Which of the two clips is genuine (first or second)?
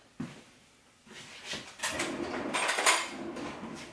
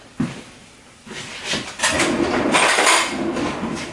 first